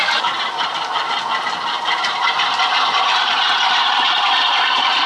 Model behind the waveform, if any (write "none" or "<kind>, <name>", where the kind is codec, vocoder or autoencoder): vocoder, BigVGAN v2